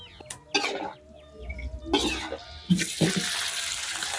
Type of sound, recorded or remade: recorded